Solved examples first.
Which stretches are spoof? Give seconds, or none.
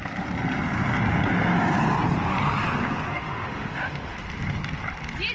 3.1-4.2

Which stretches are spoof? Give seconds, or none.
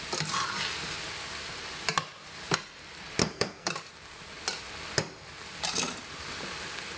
3.2-3.7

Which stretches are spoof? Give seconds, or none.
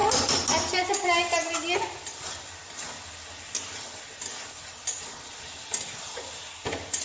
none